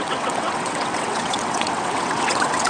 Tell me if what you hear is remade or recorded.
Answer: remade